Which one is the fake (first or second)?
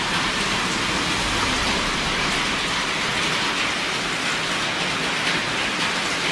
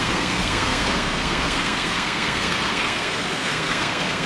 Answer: second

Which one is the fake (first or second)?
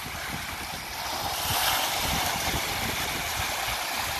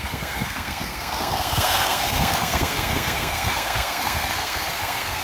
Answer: second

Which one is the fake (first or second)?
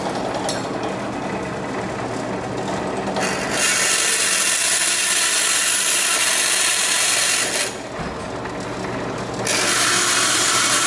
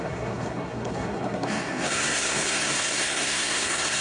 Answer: second